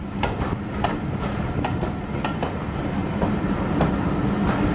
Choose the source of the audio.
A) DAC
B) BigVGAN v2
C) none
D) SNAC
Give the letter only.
C